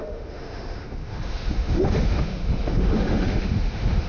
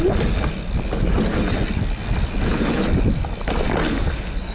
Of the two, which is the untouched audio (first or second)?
second